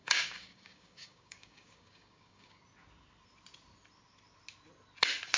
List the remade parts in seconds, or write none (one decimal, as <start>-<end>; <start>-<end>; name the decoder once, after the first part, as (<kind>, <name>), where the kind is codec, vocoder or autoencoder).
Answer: 0.0-2.6 (codec, DAC)